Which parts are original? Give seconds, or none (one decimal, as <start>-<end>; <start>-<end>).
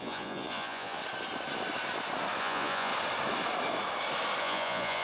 1.0-2.4; 2.9-4.4